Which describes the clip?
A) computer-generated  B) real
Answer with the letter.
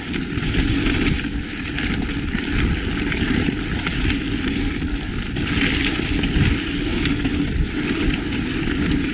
B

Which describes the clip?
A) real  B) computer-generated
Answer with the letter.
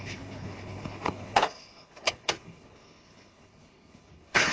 B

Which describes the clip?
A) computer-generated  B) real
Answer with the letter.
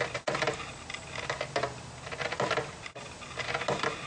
B